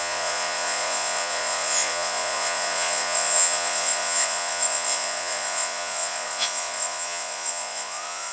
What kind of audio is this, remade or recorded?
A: remade